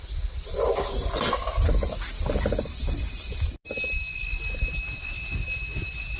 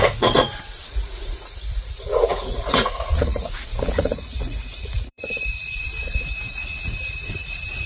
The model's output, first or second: second